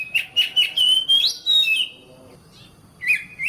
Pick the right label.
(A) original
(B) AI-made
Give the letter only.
A